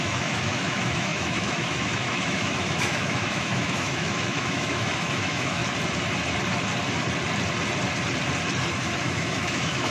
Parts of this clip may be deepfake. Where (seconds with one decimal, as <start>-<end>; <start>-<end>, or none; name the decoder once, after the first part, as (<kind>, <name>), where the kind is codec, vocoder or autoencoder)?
0.0-5.6 (autoencoder, DAC-VAE); 9.0-9.9